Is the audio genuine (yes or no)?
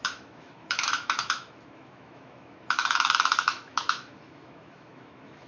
no